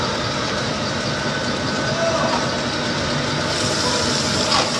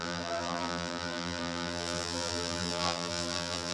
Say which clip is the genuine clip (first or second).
first